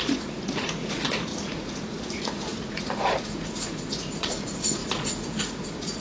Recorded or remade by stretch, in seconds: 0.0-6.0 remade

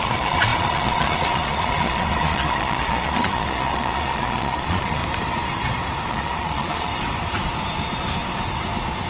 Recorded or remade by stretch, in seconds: 0.0-5.0 remade; 5.0-6.1 recorded; 6.1-6.9 remade; 6.9-9.1 recorded

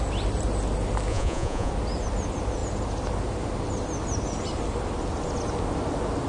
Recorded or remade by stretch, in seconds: 0.0-1.1 recorded; 1.1-1.7 remade; 1.7-6.3 recorded

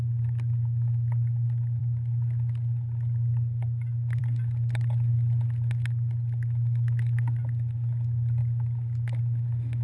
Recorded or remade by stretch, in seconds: 0.0-9.8 recorded

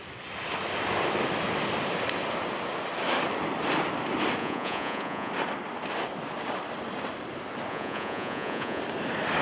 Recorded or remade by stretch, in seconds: 0.0-4.4 recorded; 4.4-5.3 remade; 5.3-7.7 recorded; 7.7-8.8 remade; 8.8-9.4 recorded